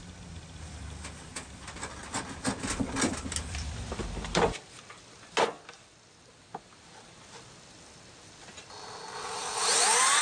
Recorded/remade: recorded